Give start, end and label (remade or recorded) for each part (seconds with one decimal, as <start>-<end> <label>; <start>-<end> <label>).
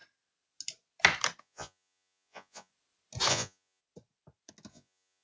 0.0-1.4 recorded; 1.4-2.7 remade; 2.7-3.3 recorded; 3.3-3.8 remade; 3.8-4.7 recorded; 4.7-5.2 remade